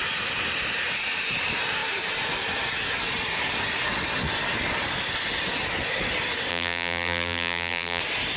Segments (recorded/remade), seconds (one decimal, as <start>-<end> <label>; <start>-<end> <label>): 0.0-6.5 recorded; 6.5-8.0 remade; 8.0-8.4 recorded